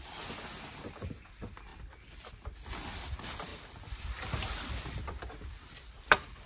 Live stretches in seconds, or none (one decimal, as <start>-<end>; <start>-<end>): 0.0-6.5